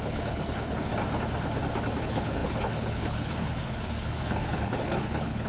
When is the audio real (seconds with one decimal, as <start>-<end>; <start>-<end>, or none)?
0.9-2.0